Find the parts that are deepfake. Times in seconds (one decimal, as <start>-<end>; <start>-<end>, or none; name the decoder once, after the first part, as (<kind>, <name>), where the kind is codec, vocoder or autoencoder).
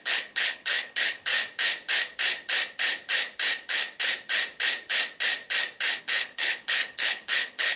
0.0-1.3 (codec, HILCodec); 6.0-7.8